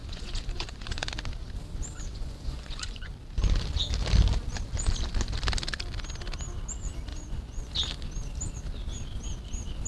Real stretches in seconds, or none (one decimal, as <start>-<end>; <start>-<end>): 1.1-2.1; 3.1-7.1; 7.7-9.9

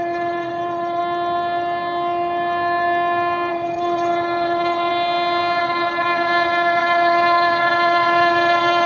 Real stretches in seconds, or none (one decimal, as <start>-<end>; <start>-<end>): 1.0-3.5; 4.9-5.6

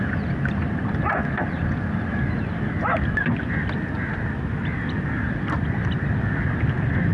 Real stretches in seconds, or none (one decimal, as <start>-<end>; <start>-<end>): 0.0-7.1

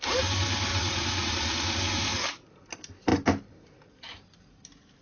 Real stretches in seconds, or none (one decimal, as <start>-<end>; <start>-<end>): 0.0-0.7; 1.8-5.0

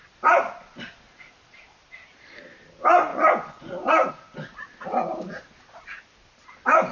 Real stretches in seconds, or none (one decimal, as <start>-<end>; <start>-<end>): 0.0-3.1; 4.1-6.9